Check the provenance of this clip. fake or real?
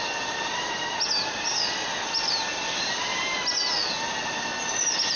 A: real